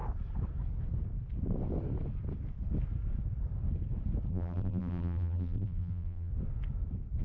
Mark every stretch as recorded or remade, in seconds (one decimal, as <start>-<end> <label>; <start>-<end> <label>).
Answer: 0.0-4.3 recorded; 4.3-6.3 remade; 6.3-7.2 recorded